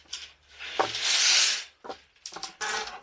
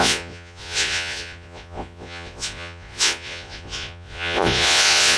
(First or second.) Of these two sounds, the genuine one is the first